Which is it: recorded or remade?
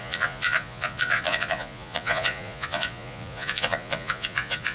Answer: remade